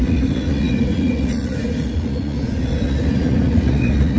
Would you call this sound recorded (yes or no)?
no